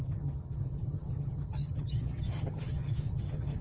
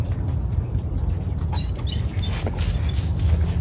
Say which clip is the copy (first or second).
first